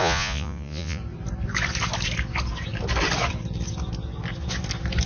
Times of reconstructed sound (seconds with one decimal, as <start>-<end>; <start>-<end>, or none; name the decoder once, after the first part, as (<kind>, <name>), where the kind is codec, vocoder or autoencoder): 0.0-1.0 (vocoder, Vocos)